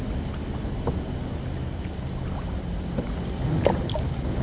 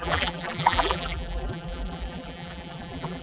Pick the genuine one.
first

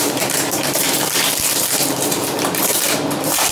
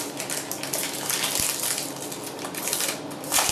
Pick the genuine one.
second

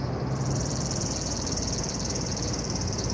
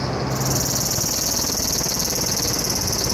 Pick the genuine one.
second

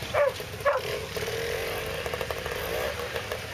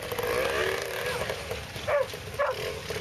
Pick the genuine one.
second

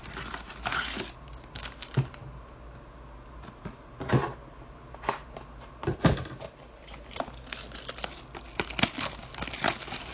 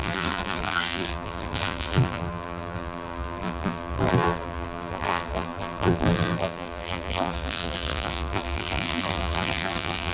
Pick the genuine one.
first